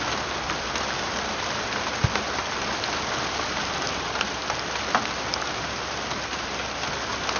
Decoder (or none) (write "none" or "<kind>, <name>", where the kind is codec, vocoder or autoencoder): none